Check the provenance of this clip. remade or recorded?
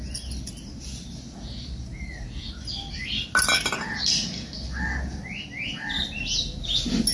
recorded